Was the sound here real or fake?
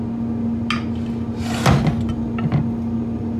real